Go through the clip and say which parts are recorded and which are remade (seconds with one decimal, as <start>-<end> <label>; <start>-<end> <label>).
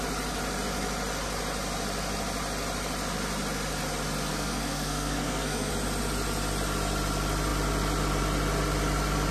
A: 0.0-4.3 recorded; 4.3-5.7 remade; 5.7-9.3 recorded